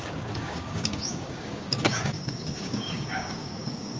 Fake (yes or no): yes